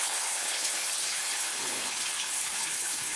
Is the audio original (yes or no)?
no